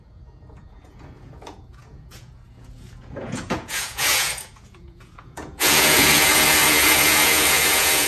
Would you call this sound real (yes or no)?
no